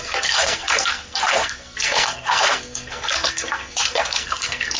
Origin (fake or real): fake